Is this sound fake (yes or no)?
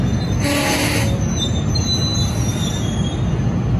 no